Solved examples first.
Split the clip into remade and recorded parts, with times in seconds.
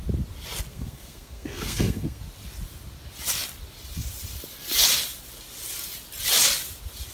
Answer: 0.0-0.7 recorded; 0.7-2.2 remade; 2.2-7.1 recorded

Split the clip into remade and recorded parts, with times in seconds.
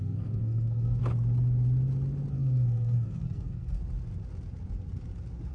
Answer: 0.0-1.0 remade; 1.0-2.3 recorded; 2.3-3.8 remade; 3.8-5.5 recorded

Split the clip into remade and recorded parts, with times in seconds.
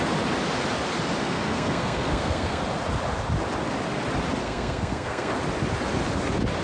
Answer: 0.0-1.2 recorded; 1.2-2.6 remade; 2.6-4.4 recorded; 4.4-5.3 remade; 5.3-6.6 recorded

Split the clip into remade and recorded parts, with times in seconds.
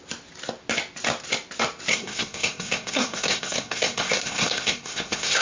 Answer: 0.0-1.9 recorded; 1.9-5.4 remade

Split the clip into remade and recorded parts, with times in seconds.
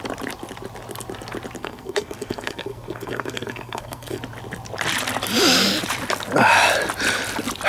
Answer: 0.0-1.6 recorded; 1.6-4.2 remade; 4.2-7.7 recorded